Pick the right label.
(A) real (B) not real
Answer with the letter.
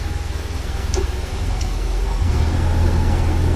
B